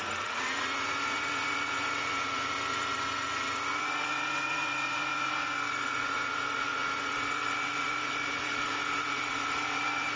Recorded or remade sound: remade